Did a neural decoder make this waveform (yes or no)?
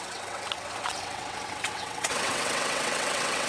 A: yes